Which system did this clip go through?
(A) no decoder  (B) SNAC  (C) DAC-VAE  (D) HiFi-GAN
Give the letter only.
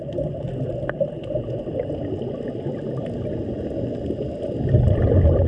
A